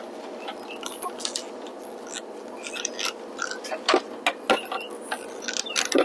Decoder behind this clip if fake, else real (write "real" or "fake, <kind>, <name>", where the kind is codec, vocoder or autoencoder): real